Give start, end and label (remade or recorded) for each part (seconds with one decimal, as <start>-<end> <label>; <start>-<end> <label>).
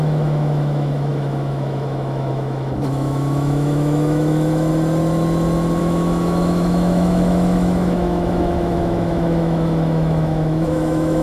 0.0-4.7 remade; 4.7-5.8 recorded; 5.8-11.2 remade